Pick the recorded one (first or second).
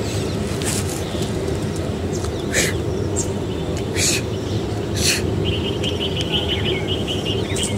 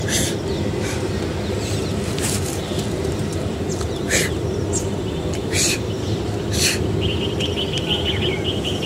first